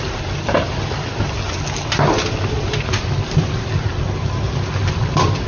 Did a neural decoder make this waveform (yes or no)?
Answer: no